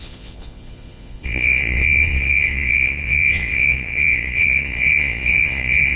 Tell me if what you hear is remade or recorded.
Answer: remade